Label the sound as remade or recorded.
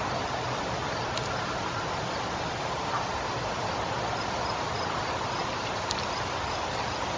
recorded